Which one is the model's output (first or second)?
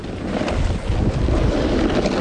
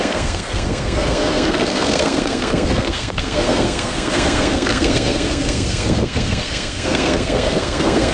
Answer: second